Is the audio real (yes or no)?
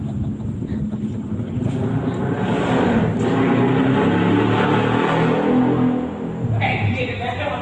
yes